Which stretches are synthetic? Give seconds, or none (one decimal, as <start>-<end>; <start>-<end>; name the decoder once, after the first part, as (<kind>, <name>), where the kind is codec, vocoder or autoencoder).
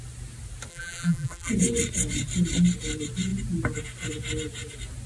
0.7-1.5 (vocoder, BigVGAN v2)